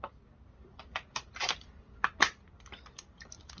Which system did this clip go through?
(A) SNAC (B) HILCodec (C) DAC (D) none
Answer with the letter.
D